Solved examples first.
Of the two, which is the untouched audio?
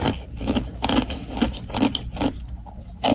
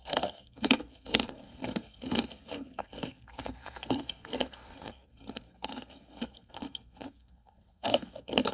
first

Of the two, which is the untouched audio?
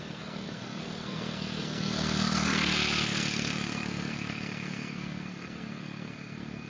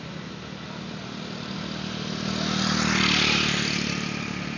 second